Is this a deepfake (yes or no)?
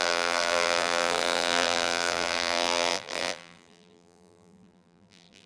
yes